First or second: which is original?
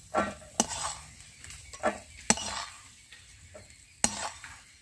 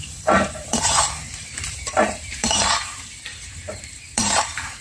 first